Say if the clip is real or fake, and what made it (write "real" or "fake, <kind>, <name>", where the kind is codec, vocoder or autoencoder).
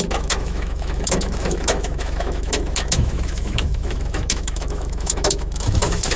fake, autoencoder, DAC-VAE